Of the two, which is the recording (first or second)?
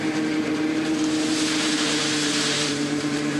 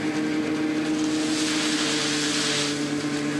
second